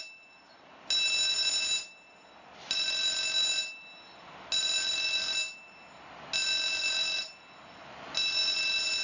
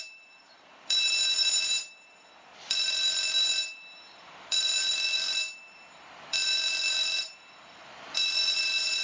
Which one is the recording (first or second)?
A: first